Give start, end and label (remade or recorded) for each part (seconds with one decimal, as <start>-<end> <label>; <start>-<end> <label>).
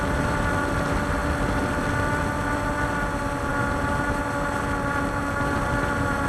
0.0-6.3 recorded